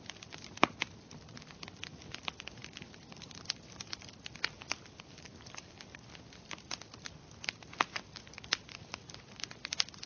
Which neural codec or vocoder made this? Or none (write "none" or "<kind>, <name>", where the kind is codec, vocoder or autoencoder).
none